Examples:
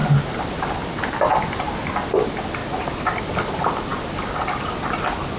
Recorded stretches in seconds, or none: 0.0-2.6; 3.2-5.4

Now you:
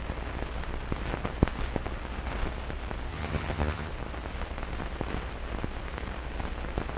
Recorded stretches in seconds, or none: 0.0-3.1; 3.9-7.0

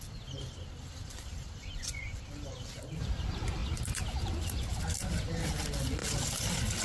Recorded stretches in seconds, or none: 0.0-1.6; 2.2-6.8

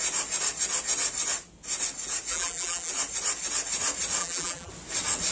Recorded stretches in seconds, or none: 0.0-2.3; 2.9-4.2; 4.7-5.3

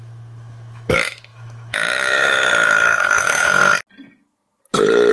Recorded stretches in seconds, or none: 3.6-5.1

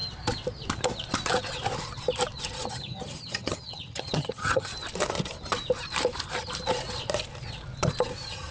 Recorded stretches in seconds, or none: 0.0-2.7; 4.7-8.5

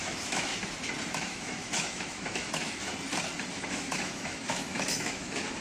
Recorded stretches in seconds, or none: 0.5-1.1; 2.9-3.5